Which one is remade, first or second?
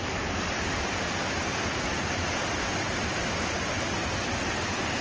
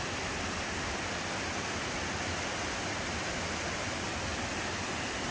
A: first